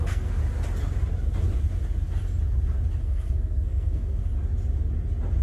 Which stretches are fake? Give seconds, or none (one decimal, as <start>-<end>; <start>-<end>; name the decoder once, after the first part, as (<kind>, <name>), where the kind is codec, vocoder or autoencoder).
0.0-0.4 (codec, SNAC); 3.0-4.3